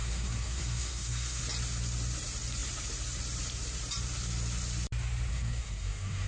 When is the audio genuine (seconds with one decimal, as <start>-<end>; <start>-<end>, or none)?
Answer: 1.4-5.3